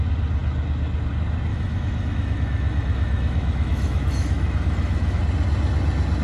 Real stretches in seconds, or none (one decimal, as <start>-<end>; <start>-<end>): 0.0-1.5; 5.2-6.2